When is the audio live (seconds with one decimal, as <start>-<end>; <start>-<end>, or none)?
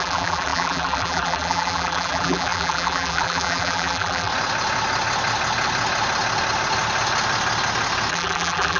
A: 4.3-8.1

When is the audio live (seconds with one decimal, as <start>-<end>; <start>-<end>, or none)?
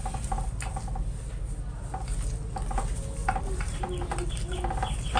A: 0.0-3.2; 4.6-5.2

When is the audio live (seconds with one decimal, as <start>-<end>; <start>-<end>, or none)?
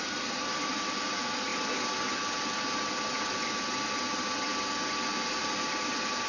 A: 1.5-5.3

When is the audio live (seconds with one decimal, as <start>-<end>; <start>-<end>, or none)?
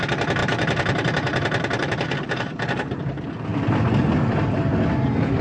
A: 0.0-0.4; 3.0-5.4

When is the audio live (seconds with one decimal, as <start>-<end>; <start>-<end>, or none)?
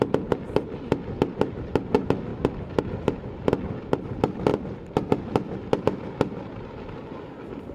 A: 0.9-2.3; 2.8-4.5; 5.1-7.7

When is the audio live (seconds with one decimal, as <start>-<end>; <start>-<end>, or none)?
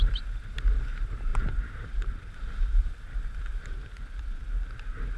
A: 0.0-1.3; 4.2-5.2